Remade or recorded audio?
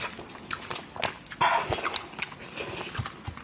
recorded